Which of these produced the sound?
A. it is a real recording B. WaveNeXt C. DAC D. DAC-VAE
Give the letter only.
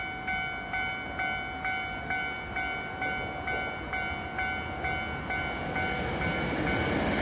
A